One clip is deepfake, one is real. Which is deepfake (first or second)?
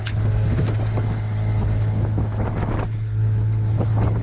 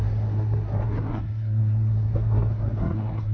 second